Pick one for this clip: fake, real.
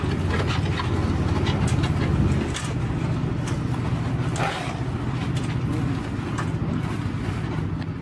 real